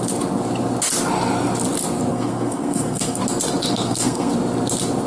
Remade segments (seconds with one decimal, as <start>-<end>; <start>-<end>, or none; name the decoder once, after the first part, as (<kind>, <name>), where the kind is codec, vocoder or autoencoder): 2.1-3.2 (codec, SNAC); 3.7-4.3